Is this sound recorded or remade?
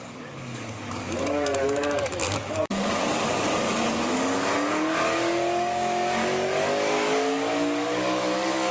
remade